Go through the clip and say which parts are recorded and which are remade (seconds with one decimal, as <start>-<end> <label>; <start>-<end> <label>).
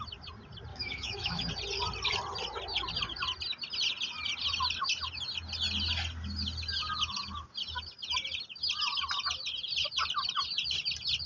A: 0.0-0.7 recorded; 0.7-1.5 remade; 1.5-11.3 recorded